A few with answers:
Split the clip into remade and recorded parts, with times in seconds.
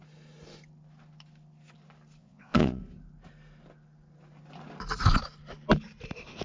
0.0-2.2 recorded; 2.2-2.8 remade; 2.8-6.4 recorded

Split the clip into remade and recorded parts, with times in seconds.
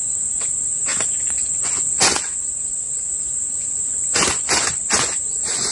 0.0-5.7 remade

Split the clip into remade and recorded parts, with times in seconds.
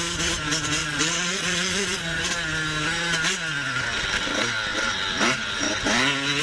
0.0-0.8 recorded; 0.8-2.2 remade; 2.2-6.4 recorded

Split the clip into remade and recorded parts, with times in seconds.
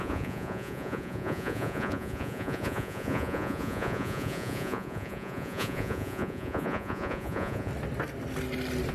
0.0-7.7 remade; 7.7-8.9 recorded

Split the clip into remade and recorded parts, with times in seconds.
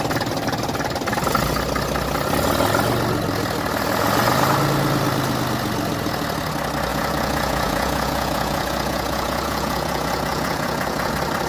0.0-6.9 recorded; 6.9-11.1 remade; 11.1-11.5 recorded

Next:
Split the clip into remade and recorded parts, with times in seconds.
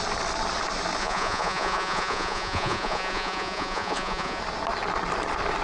0.0-1.0 recorded; 1.0-4.4 remade; 4.4-5.6 recorded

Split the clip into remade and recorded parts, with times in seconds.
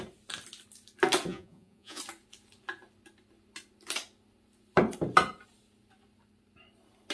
0.0-1.3 recorded; 1.3-2.0 remade; 2.0-7.1 recorded